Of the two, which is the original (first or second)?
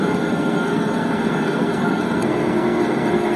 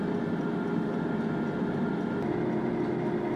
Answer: second